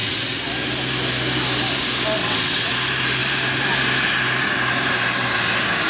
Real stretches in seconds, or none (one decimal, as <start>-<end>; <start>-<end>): 0.5-2.2; 2.7-5.9